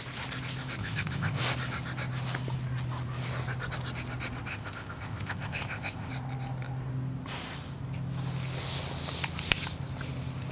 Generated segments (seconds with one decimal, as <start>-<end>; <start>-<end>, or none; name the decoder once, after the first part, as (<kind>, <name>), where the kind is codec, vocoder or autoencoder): 0.8-1.4 (codec, ZipCodec); 4.5-6.1